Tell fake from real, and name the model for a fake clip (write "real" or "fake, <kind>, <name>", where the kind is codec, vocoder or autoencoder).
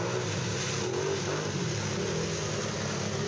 real